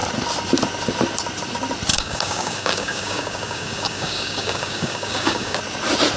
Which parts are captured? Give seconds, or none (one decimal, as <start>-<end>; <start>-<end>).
0.0-1.9; 5.6-6.2